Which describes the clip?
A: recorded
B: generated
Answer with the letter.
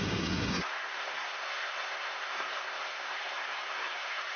B